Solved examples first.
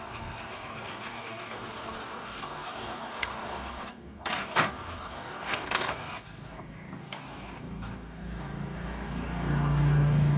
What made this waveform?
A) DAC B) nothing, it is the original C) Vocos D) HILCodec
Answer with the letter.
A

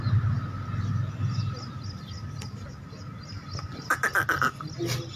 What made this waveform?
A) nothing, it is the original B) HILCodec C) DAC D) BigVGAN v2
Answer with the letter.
A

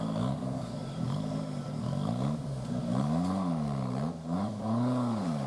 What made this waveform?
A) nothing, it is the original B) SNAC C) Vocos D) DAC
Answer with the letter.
D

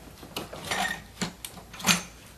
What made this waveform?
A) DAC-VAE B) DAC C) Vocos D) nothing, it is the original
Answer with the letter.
D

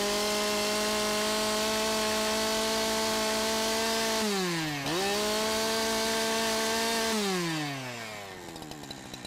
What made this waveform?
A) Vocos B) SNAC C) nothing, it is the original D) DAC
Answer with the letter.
C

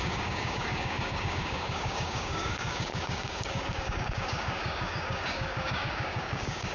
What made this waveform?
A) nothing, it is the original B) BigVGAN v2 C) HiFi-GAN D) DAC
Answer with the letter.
D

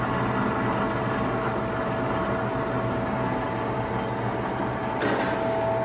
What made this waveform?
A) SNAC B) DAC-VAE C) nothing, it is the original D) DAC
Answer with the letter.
C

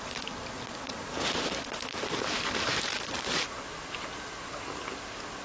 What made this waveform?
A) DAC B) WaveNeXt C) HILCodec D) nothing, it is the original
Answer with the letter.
D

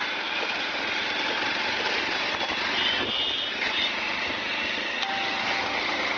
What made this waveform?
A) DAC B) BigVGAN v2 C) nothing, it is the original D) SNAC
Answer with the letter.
C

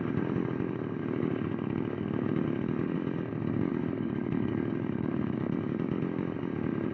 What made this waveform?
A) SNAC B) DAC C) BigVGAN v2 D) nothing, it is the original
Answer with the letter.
B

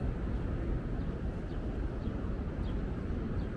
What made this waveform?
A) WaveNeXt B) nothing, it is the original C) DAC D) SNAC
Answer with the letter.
B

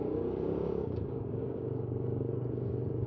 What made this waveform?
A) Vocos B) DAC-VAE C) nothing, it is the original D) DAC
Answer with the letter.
D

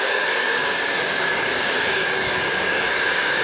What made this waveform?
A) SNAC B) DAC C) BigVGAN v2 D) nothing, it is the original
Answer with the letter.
B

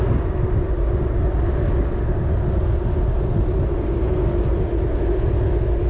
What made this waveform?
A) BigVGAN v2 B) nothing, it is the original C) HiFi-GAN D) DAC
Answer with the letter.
B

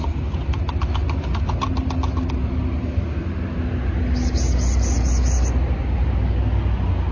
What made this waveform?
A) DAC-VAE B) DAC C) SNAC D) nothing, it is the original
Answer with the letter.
D